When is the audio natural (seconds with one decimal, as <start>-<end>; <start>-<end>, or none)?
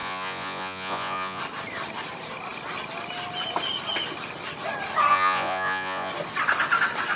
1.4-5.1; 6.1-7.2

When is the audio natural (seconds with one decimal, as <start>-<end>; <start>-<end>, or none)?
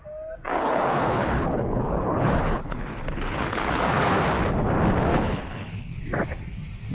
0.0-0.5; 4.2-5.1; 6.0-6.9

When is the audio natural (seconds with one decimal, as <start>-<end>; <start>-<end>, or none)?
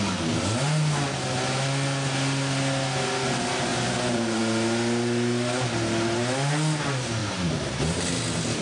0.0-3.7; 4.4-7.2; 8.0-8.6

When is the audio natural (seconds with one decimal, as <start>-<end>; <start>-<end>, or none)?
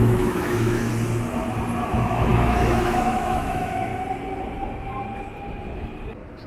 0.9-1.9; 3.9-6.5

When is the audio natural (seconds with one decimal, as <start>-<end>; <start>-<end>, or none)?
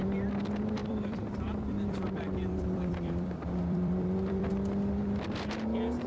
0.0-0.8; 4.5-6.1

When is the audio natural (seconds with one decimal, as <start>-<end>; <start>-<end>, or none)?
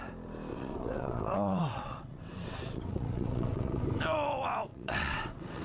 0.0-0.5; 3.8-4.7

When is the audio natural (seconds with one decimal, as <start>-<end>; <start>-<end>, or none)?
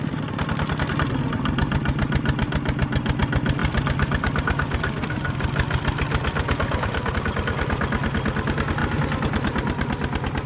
0.0-10.5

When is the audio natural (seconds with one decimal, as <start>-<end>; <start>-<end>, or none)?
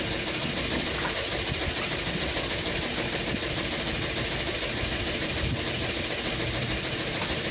0.0-7.5